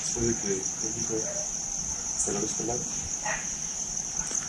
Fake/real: real